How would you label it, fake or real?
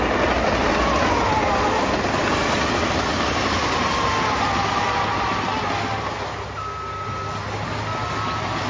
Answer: real